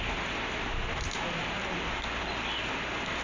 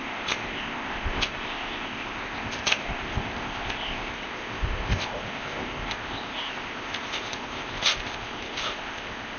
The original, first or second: first